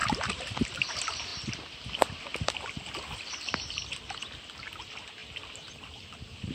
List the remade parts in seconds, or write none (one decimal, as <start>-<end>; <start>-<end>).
0.0-0.6